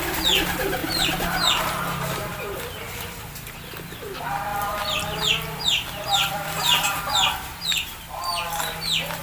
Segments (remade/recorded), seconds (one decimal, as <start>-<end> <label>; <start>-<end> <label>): 0.0-0.8 recorded; 0.8-1.8 remade; 1.8-4.5 recorded; 4.5-8.0 remade; 8.0-9.2 recorded